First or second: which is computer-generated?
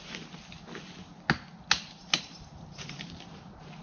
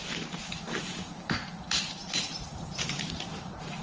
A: second